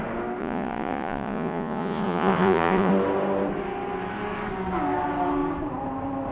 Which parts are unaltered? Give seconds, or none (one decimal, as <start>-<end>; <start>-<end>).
0.0-0.4; 2.9-6.3